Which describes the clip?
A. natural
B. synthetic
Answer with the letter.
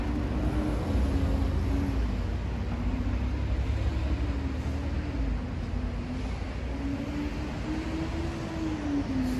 A